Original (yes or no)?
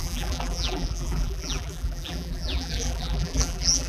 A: no